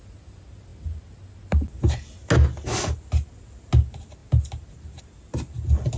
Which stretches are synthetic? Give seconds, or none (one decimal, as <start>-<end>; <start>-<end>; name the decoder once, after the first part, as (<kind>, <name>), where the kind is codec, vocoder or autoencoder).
none